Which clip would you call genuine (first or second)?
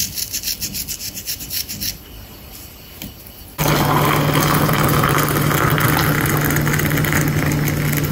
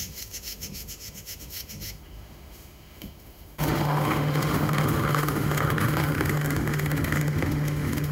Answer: first